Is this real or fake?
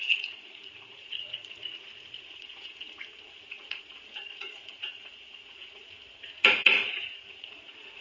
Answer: fake